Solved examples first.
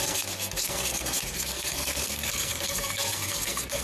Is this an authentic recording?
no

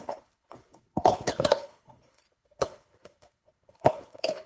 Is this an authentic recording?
no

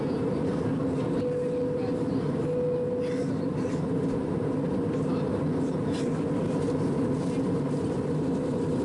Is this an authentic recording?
yes